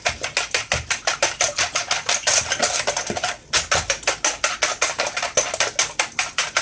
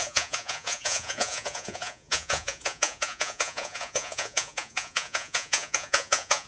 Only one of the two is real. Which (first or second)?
first